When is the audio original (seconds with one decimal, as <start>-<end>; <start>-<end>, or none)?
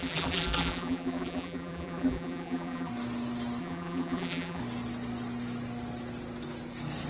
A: 2.9-3.6; 4.6-7.1